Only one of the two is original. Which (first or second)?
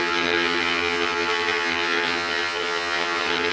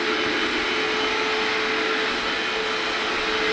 second